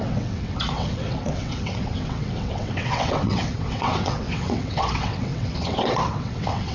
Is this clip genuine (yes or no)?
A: no